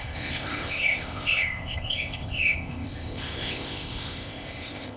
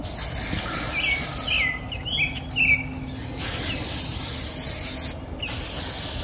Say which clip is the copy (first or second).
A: first